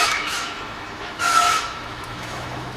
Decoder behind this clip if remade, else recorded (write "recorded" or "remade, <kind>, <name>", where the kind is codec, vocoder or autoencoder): remade, autoencoder, DAC-VAE